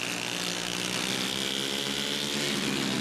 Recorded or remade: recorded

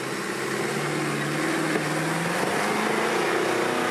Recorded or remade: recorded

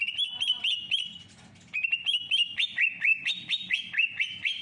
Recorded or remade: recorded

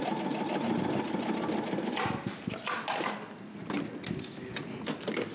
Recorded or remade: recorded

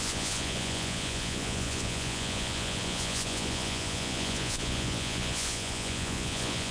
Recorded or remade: remade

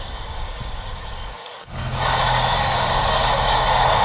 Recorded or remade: remade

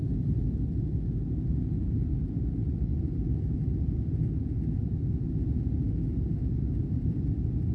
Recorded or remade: recorded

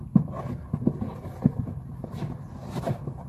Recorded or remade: recorded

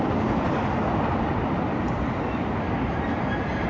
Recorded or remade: remade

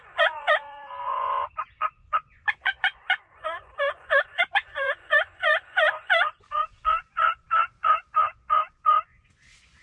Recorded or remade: remade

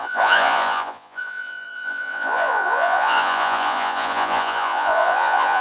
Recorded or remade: remade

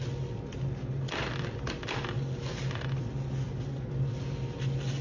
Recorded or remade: recorded